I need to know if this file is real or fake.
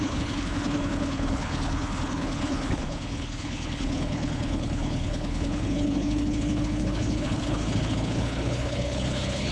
fake